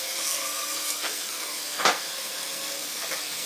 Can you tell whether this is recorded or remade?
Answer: remade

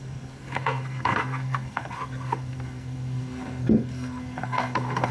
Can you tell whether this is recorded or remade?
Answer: remade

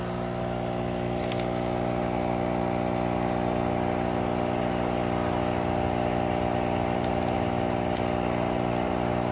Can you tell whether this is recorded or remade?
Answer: recorded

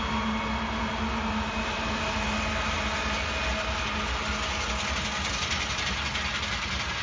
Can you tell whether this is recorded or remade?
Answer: recorded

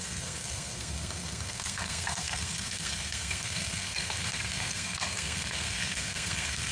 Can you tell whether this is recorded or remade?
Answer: remade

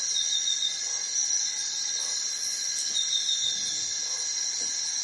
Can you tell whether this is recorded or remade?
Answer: recorded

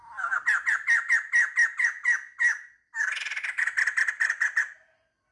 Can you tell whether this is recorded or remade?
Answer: recorded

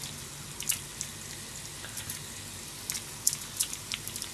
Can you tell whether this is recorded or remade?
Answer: recorded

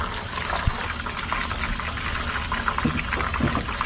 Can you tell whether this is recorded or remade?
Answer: recorded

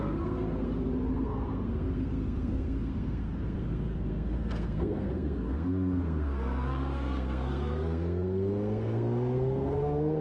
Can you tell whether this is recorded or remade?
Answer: remade